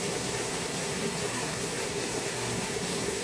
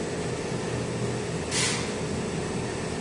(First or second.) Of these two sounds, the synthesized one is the first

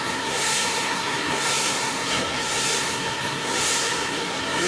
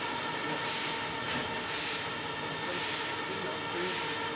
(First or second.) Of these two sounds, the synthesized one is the first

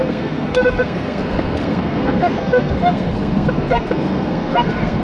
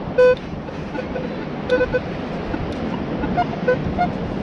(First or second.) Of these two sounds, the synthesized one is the first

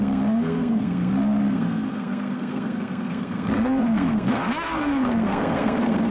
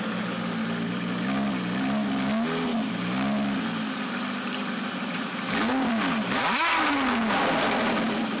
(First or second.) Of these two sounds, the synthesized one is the first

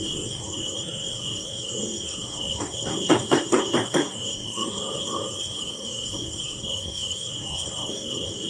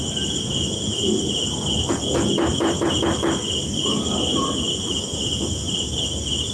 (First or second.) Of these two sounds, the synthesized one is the first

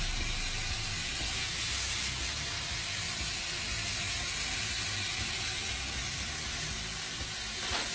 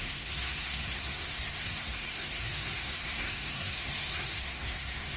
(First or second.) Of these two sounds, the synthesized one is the second